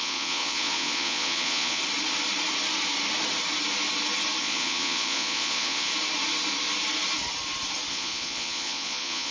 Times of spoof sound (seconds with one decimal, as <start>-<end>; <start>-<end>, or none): 0.0-1.8; 4.4-5.9; 7.9-9.3